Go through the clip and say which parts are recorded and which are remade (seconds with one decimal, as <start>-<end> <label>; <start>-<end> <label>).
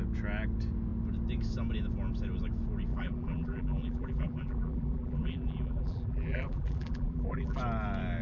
0.0-2.9 recorded; 2.9-7.6 remade; 7.6-8.2 recorded